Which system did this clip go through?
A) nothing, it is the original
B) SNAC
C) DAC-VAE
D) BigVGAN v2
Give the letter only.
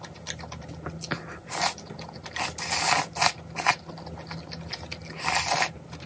A